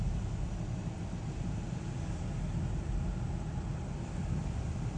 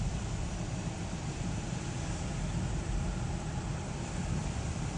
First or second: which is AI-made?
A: second